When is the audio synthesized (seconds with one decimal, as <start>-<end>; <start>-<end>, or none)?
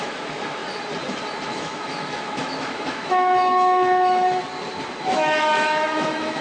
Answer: 0.0-0.6; 1.5-4.4; 5.0-6.4